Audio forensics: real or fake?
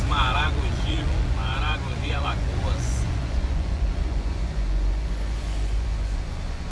fake